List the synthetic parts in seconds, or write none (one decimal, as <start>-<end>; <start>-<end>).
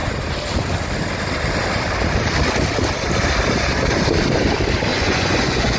4.9-5.8